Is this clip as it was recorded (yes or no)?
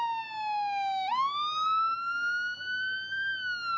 yes